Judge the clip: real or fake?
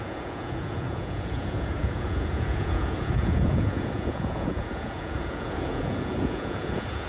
fake